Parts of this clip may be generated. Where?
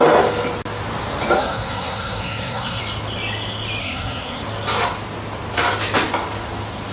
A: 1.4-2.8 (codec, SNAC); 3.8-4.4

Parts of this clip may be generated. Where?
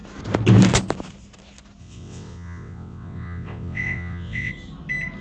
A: 1.8-4.5 (vocoder, WaveNeXt)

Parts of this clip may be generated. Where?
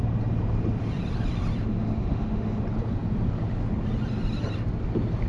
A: 1.7-2.6 (autoencoder, DAC-VAE)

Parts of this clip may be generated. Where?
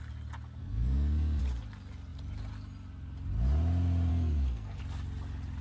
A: 0.6-1.4 (codec, SNAC); 4.1-4.8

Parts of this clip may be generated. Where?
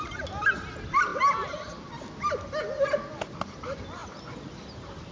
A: none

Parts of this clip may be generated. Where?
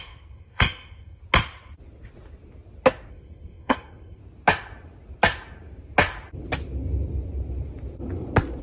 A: 0.0-1.2 (codec, SNAC); 3.1-4.2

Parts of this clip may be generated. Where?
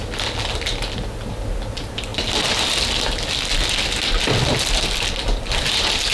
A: none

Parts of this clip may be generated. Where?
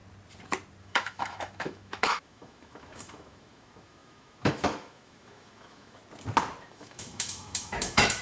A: 0.8-6.0 (autoencoder, DAC-VAE); 6.6-8.2